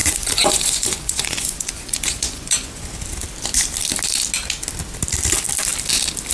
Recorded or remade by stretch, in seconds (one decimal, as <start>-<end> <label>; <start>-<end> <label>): 0.0-2.9 remade; 2.9-6.3 recorded